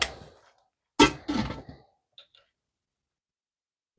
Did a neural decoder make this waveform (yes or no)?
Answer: no